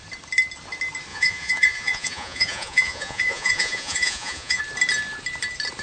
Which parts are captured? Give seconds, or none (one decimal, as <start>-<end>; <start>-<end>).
0.0-1.1; 4.6-5.8